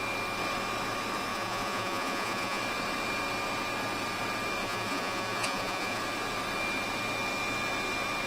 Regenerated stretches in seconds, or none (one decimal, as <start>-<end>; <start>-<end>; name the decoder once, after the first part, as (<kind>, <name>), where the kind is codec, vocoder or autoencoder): 1.3-2.6 (vocoder, Vocos); 4.6-6.0